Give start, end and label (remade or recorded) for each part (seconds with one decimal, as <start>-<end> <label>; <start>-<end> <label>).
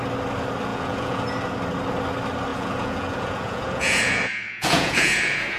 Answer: 0.0-0.7 recorded; 0.7-1.2 remade; 1.2-2.5 recorded; 2.5-5.6 remade